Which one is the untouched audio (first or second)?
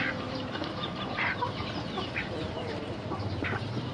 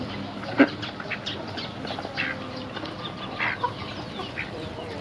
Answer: second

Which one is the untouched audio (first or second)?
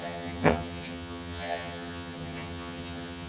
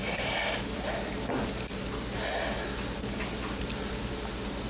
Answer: second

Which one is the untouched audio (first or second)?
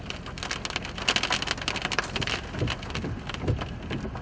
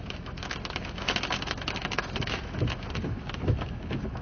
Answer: first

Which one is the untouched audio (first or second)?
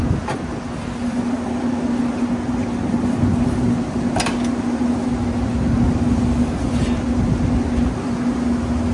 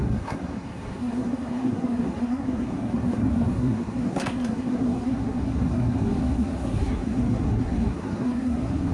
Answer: first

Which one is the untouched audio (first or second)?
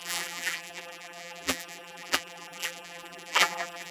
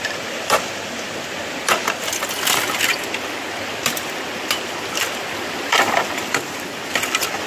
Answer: second